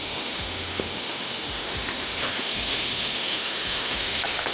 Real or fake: fake